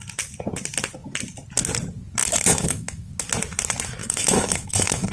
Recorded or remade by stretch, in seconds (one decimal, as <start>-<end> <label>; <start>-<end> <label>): 0.0-2.2 recorded; 2.2-3.1 remade; 3.1-4.0 recorded; 4.0-5.1 remade